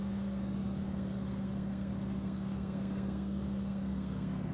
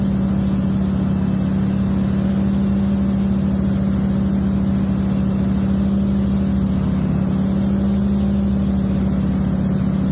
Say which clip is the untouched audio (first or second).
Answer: second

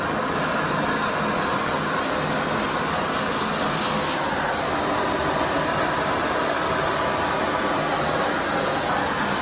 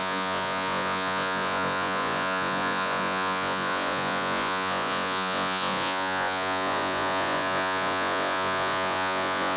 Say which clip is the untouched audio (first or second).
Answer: first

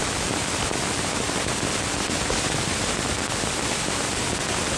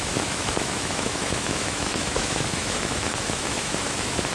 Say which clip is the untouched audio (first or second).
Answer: first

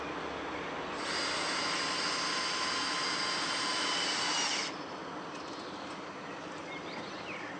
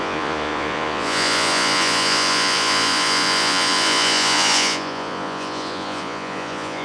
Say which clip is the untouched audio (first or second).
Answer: first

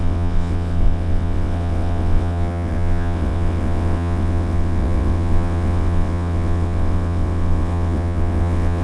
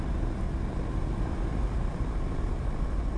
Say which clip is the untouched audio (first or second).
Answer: second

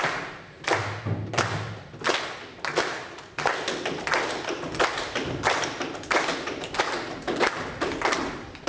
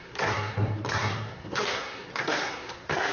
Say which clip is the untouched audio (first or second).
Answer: first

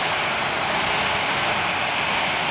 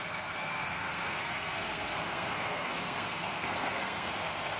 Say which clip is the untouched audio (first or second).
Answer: first